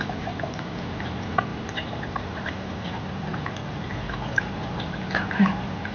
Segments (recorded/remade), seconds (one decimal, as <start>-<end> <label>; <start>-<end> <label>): 0.0-1.5 recorded; 1.5-2.7 remade; 2.7-5.9 recorded